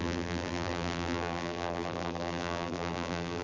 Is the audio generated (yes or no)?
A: yes